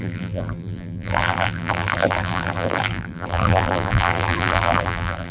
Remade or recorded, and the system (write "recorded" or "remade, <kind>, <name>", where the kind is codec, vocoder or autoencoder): remade, vocoder, BigVGAN v2